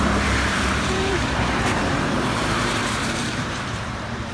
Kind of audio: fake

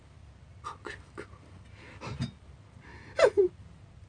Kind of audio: real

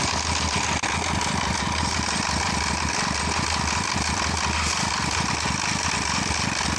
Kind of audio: real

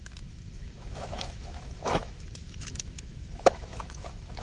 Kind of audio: fake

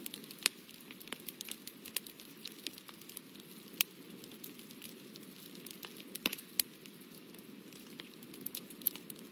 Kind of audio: real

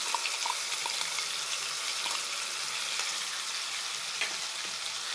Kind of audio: real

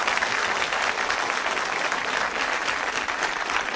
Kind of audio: real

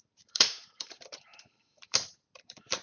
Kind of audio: fake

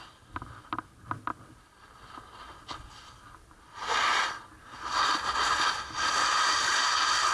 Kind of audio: real